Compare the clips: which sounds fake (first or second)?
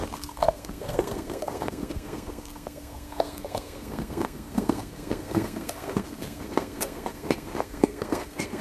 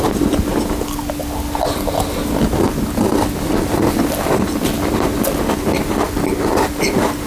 first